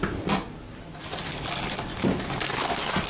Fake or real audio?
real